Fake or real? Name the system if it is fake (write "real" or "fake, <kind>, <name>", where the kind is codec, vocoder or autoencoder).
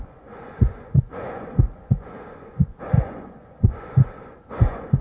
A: fake, vocoder, Vocos